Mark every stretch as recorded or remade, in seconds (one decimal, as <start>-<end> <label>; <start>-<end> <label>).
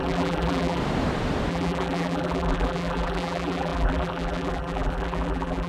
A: 0.0-0.8 remade; 0.8-1.5 recorded; 1.5-5.7 remade